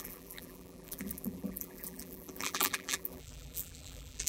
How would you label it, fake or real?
fake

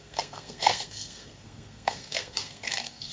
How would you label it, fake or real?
fake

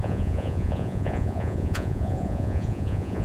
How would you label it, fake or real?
fake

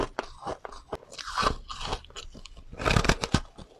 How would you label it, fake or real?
real